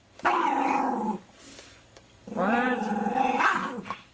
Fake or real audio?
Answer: fake